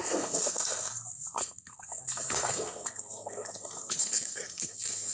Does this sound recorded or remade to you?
remade